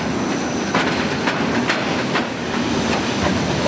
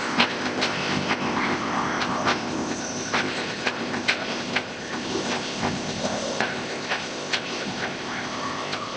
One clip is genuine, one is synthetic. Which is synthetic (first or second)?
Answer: second